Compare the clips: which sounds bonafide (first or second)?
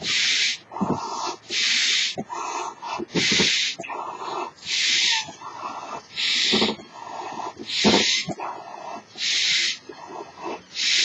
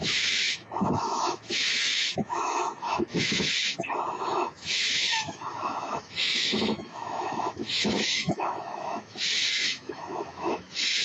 first